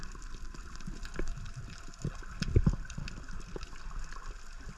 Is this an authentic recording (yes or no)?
yes